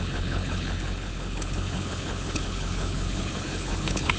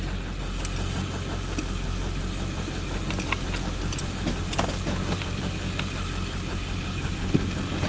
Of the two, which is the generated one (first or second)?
first